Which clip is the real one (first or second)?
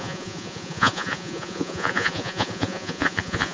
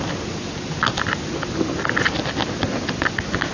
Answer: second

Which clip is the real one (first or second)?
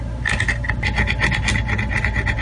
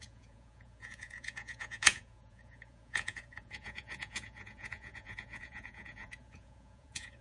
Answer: first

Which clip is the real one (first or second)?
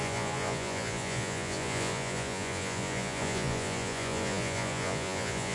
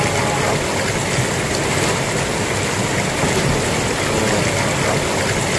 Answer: second